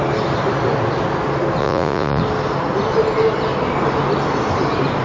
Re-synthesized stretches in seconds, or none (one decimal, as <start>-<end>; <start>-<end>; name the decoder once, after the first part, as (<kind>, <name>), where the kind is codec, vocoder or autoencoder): 1.6-2.2 (vocoder, Vocos)